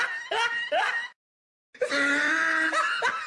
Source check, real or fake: real